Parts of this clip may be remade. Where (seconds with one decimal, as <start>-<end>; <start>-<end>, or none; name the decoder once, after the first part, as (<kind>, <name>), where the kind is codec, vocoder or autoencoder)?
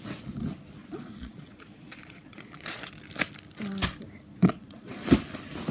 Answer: 0.8-2.9 (vocoder, Vocos); 4.3-5.1